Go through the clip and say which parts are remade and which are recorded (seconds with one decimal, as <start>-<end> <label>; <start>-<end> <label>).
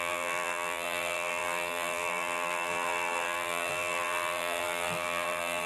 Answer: 0.0-5.7 remade